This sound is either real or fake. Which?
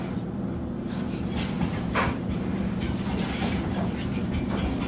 fake